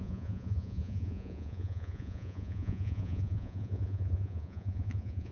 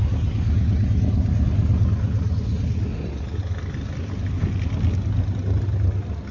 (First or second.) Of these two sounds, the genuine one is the second